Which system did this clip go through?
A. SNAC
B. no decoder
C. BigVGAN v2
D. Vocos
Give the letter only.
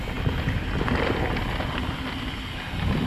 B